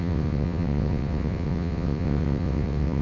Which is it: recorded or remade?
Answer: remade